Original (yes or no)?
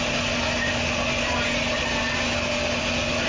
yes